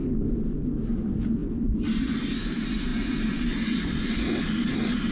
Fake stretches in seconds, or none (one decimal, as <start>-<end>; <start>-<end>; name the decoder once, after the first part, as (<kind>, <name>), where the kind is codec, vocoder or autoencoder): 0.0-0.7 (vocoder, BigVGAN v2)